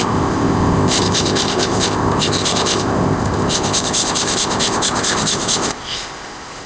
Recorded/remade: remade